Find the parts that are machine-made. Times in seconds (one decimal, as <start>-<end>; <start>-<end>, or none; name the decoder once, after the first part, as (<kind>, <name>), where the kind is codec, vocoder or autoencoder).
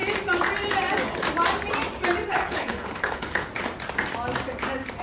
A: 2.3-3.5 (codec, HILCodec)